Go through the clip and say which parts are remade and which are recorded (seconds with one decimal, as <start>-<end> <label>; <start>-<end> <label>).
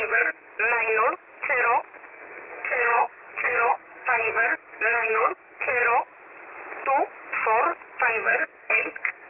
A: 0.0-0.5 remade; 0.5-2.1 recorded; 2.1-5.8 remade; 5.8-8.1 recorded; 8.1-9.3 remade